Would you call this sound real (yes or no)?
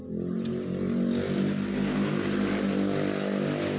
yes